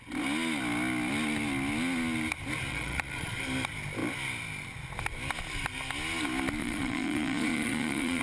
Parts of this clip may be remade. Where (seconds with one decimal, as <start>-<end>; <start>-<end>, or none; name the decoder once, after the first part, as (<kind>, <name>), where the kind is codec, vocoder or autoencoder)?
2.7-3.4 (vocoder, Vocos); 6.6-8.2